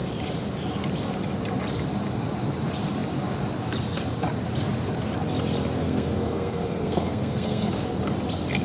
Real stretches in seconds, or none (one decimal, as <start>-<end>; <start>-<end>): 0.0-5.8; 7.7-8.6